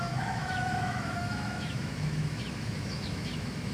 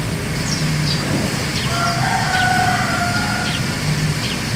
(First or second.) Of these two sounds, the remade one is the first